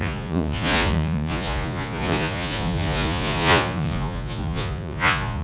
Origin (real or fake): fake